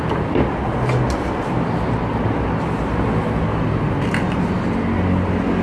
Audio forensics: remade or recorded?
recorded